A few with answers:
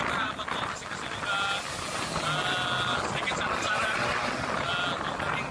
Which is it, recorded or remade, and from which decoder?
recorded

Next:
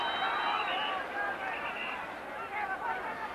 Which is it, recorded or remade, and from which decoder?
recorded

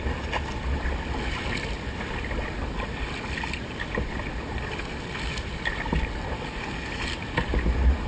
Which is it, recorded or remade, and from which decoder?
recorded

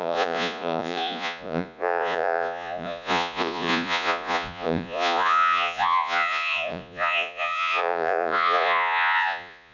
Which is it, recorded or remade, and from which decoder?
remade, vocoder, Vocos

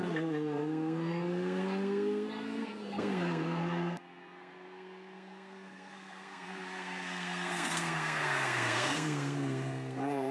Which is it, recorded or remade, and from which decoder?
remade, codec, SNAC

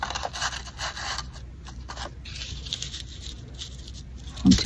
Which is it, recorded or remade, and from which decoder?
recorded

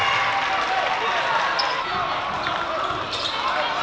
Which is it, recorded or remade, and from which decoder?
recorded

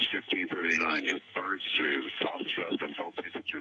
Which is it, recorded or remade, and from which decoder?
remade, codec, SNAC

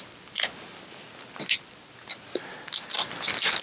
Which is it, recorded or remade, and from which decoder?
recorded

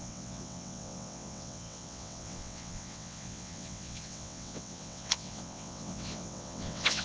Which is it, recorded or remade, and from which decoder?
remade, vocoder, WaveNeXt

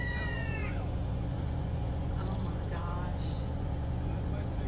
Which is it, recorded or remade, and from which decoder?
remade, vocoder, Vocos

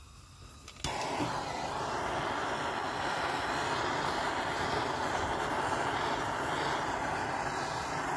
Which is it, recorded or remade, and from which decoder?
recorded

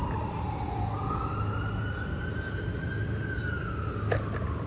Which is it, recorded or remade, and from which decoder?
recorded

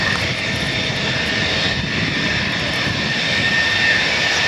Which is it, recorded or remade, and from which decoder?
recorded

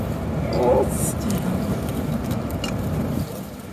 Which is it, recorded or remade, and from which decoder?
recorded